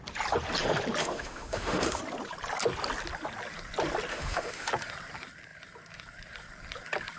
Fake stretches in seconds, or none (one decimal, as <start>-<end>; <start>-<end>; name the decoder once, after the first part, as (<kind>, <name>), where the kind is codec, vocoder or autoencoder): 1.0-2.0 (autoencoder, DAC-VAE); 4.1-4.7